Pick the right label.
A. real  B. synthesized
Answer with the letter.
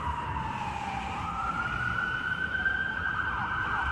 B